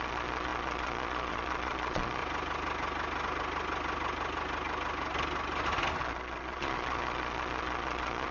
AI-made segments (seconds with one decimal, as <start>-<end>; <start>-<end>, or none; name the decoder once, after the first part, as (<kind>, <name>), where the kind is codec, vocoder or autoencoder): 0.0-2.2 (vocoder, Vocos); 6.0-8.3